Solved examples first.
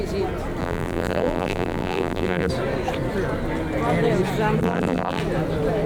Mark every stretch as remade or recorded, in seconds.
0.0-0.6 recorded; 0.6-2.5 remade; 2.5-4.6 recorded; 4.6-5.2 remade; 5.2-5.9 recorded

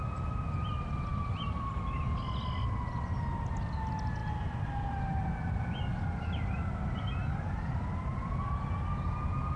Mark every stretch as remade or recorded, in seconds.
0.0-1.1 recorded; 1.1-2.0 remade; 2.0-4.2 recorded; 4.2-8.4 remade; 8.4-9.6 recorded

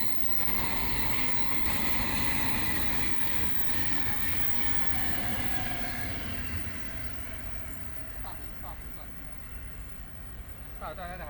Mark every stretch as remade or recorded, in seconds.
0.0-11.3 recorded

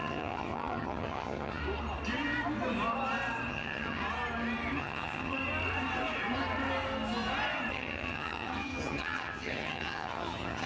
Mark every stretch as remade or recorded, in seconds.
0.0-1.6 remade; 1.6-3.5 recorded; 3.5-4.0 remade; 4.0-4.8 recorded; 4.8-5.4 remade; 5.4-7.7 recorded; 7.7-10.7 remade